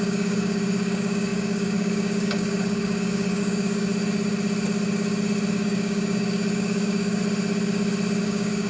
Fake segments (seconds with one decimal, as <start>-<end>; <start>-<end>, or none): 0.0-3.9; 5.5-7.2; 8.2-8.7